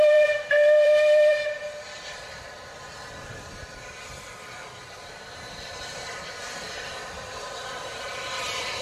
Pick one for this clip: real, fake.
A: fake